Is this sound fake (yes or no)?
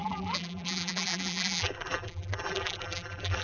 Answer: yes